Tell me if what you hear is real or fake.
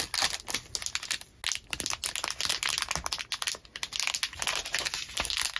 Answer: real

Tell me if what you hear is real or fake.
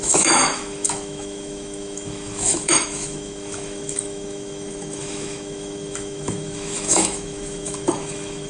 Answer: fake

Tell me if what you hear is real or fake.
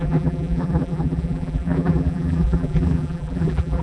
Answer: fake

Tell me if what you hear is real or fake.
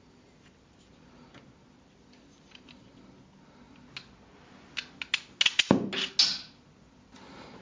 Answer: real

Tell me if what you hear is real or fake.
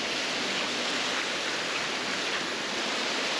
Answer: real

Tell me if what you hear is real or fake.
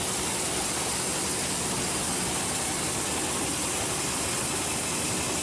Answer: real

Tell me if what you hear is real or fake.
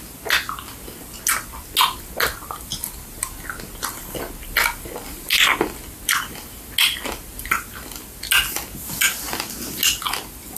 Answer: real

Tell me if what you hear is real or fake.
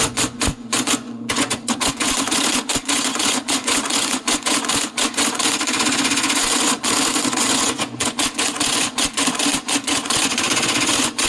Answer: fake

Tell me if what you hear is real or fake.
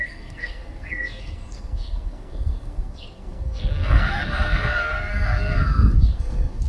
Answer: fake